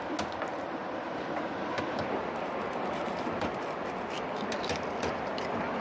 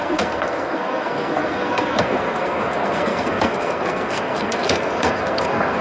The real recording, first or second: first